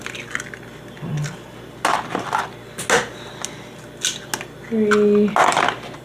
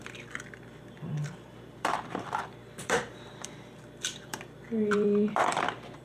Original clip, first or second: first